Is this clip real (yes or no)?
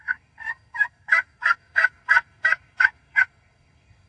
no